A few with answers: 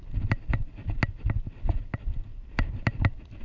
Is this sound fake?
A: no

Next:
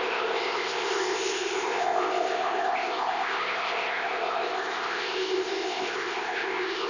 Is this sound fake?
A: yes